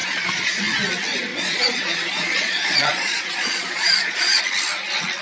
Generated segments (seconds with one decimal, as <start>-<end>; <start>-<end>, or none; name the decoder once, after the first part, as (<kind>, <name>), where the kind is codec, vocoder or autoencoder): 0.0-0.6 (vocoder, Vocos); 1.3-4.4